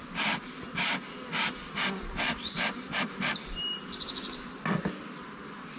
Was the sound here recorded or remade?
recorded